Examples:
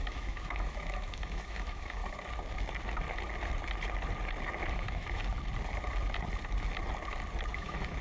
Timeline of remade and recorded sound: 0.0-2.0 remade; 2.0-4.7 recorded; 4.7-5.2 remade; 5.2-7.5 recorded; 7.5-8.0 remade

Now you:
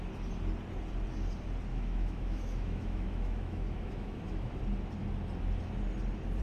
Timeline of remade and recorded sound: 0.0-1.7 recorded; 1.7-4.6 remade; 4.6-6.4 recorded

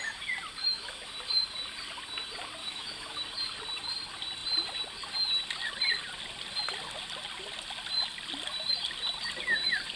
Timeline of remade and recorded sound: 0.0-0.6 recorded; 0.6-1.1 remade; 1.1-2.6 recorded; 2.6-3.2 remade; 3.2-10.0 recorded